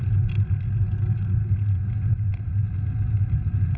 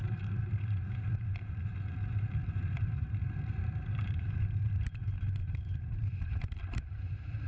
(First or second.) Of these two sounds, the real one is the first